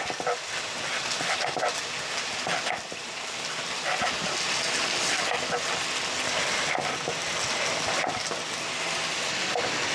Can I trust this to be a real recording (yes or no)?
yes